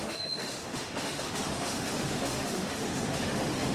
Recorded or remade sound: remade